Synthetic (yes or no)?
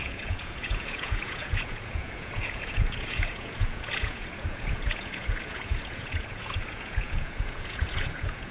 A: yes